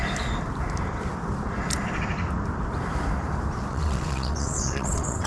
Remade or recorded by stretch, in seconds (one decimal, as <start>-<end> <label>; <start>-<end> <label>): 0.0-3.7 recorded; 3.7-5.3 remade

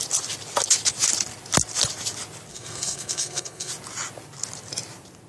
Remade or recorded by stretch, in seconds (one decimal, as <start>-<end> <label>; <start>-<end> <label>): 0.0-2.5 recorded; 2.5-3.7 remade; 3.7-5.3 recorded

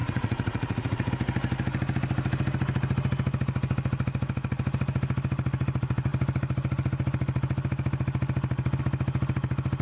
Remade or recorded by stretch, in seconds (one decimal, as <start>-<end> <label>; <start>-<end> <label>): 0.0-1.1 remade; 1.1-9.8 recorded